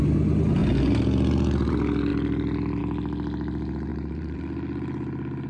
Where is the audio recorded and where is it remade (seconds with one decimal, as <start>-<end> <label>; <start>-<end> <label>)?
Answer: 0.0-3.9 recorded; 3.9-4.4 remade; 4.4-5.5 recorded